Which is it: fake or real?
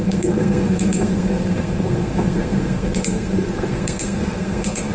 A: fake